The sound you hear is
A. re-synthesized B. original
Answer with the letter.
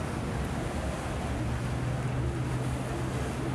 B